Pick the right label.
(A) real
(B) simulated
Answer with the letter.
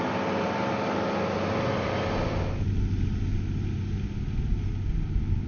A